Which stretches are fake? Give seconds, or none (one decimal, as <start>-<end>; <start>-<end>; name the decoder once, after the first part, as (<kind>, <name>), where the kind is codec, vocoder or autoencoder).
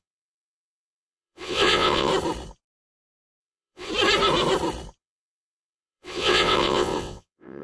0.0-2.1 (vocoder, WaveNeXt); 3.4-3.9; 5.0-7.6